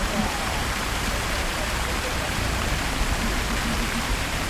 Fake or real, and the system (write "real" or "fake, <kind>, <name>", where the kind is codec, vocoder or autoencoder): fake, vocoder, BigVGAN v2